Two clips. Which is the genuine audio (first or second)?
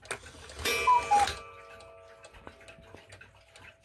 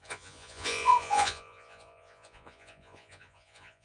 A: first